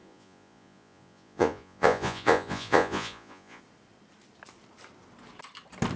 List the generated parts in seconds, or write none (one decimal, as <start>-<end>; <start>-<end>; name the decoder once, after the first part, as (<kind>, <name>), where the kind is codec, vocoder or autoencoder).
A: 0.0-3.6 (vocoder, Vocos)